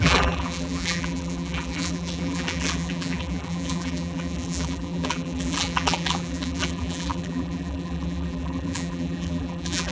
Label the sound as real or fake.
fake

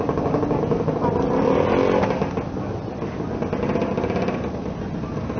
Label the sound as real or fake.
real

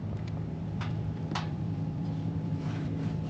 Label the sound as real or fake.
fake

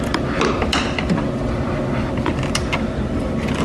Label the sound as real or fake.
real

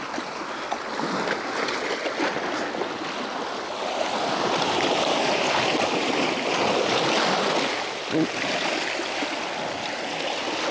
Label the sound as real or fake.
real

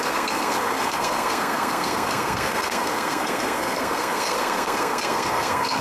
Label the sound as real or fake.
fake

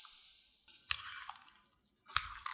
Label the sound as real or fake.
real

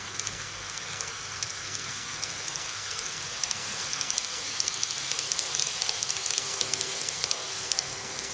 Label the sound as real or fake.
fake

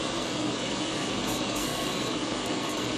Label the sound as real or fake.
fake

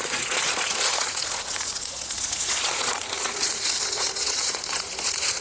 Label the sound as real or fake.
fake